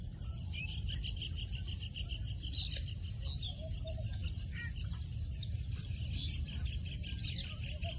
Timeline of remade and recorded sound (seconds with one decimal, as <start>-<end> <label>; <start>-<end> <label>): 0.0-8.0 recorded